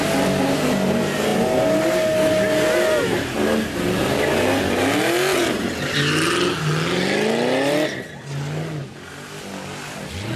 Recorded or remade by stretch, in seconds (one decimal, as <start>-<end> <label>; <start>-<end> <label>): 0.0-10.4 recorded